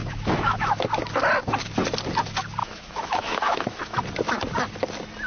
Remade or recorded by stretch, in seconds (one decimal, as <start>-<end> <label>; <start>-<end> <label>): 0.0-0.9 remade; 0.9-2.6 recorded; 2.6-4.0 remade; 4.0-5.3 recorded